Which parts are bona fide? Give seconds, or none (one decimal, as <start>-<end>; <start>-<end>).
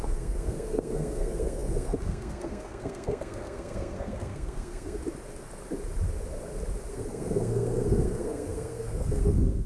5.0-6.9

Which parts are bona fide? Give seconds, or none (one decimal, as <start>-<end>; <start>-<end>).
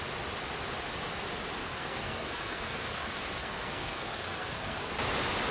0.0-1.6; 4.9-5.5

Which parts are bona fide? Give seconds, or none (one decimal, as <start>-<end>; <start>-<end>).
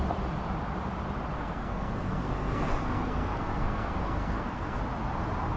0.0-1.4; 4.8-5.6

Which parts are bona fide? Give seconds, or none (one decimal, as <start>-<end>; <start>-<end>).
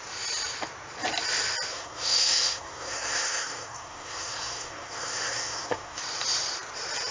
0.0-1.7; 6.0-7.1